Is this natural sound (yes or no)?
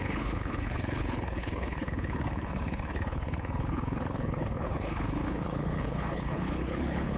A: no